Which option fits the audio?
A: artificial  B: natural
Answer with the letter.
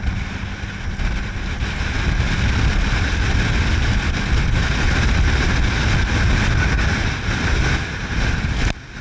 B